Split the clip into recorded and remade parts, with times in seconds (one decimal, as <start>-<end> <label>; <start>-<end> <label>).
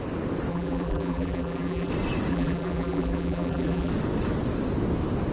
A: 0.0-0.5 recorded; 0.5-1.9 remade; 1.9-2.3 recorded; 2.3-3.9 remade; 3.9-5.3 recorded